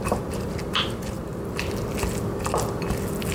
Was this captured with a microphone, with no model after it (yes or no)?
yes